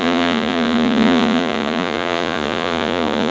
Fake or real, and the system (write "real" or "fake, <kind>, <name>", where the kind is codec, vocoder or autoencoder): fake, vocoder, Vocos